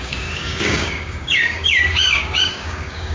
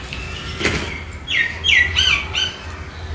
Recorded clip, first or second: second